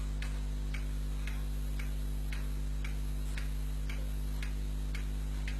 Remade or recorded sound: recorded